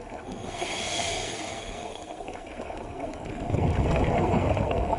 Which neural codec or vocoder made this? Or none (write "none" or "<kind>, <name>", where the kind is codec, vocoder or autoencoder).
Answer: codec, SNAC